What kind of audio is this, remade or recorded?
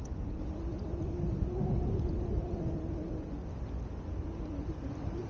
recorded